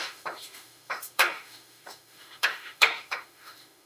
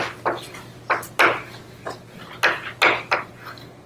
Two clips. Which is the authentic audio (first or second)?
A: second